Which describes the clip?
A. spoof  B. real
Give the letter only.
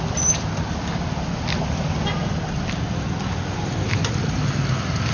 B